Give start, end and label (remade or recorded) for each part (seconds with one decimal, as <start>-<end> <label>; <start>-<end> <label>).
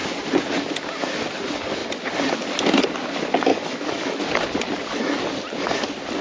0.0-3.5 recorded; 3.5-4.2 remade; 4.2-6.2 recorded